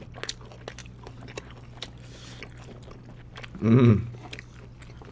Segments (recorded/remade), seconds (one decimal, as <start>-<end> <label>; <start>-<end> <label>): 0.0-5.1 recorded